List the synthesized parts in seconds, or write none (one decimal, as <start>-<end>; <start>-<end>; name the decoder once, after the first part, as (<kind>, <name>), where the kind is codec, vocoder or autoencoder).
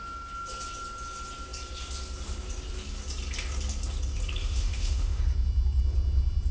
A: 4.4-5.2 (autoencoder, DAC-VAE)